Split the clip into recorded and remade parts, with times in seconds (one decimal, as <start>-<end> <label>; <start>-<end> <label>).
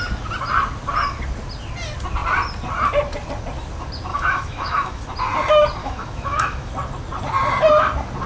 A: 0.0-4.1 recorded; 4.1-5.0 remade; 5.0-5.8 recorded; 5.8-6.7 remade; 6.7-8.3 recorded